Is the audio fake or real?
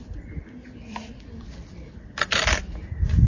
fake